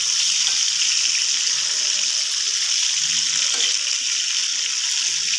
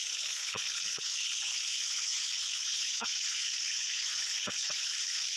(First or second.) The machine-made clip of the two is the second